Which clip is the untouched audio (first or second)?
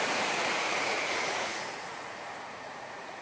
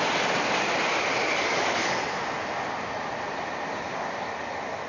second